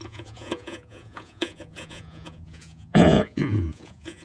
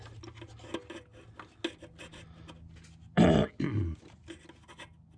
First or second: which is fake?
first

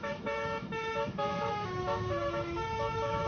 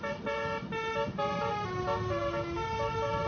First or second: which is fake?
first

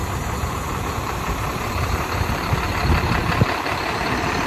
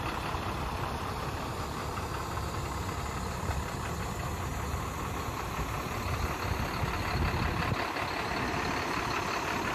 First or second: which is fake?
first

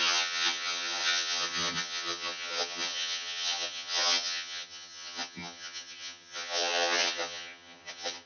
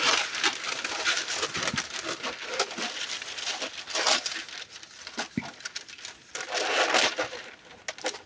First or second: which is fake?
first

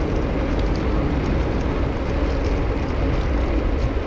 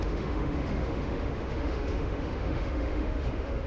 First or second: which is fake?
second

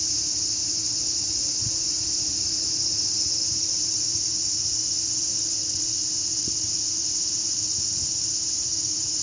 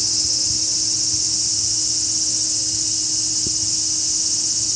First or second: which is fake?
first